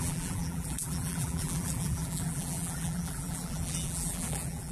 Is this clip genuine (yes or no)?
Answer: no